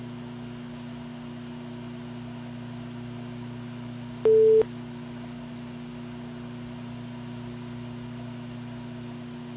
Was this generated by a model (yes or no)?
no